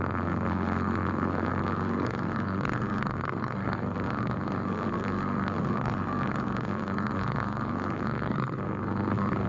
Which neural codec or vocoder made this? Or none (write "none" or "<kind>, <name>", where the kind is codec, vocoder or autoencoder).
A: codec, SNAC